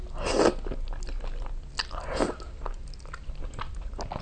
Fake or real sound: real